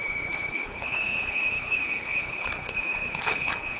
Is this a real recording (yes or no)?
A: no